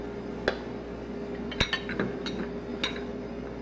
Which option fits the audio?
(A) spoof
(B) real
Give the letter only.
B